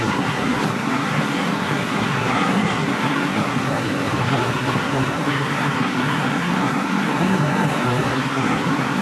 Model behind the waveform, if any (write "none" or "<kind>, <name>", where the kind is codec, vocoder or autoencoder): codec, SNAC